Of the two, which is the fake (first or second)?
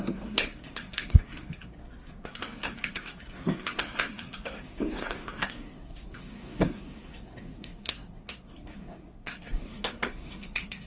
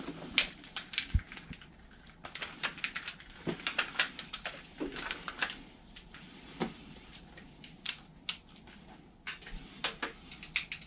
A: first